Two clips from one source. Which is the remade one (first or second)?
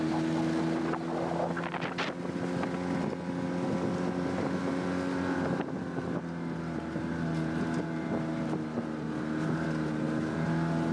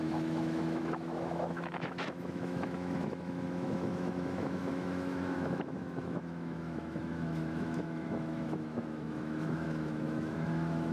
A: second